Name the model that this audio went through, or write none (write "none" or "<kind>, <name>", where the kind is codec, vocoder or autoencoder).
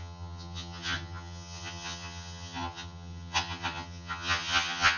vocoder, HiFi-GAN